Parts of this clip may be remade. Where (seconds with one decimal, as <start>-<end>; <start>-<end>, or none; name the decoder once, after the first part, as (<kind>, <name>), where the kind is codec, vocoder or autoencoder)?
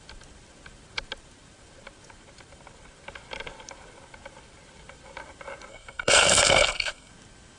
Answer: 5.7-7.1 (codec, SNAC)